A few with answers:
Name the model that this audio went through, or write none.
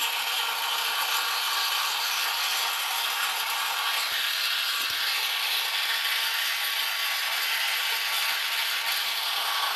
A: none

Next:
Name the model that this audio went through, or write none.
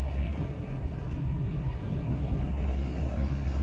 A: codec, SNAC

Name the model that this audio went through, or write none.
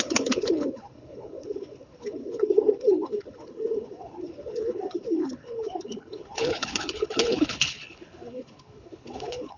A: codec, HILCodec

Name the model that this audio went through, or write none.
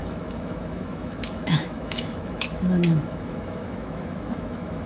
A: autoencoder, DAC-VAE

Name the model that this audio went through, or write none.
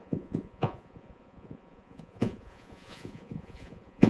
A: vocoder, Vocos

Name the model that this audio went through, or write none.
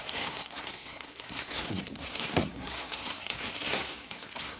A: codec, SNAC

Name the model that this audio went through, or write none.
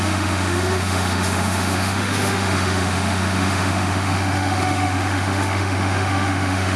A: autoencoder, DAC-VAE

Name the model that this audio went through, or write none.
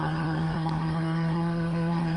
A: codec, SNAC